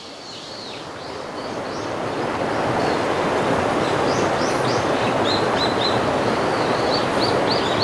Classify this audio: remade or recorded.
recorded